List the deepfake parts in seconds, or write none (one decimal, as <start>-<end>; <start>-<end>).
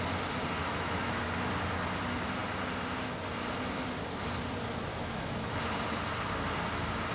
0.6-1.2; 4.9-5.6